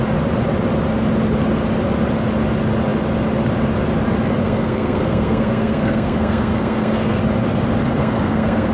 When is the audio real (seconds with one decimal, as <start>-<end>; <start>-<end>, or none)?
0.0-4.4; 7.2-8.0